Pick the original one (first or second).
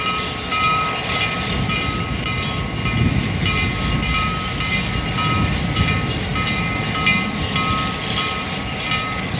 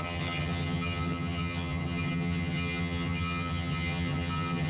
first